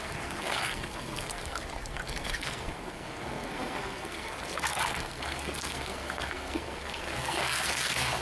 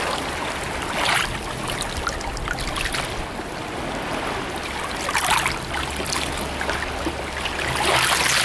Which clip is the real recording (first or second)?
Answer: second